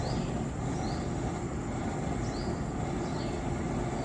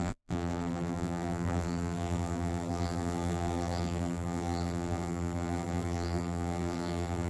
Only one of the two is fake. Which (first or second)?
second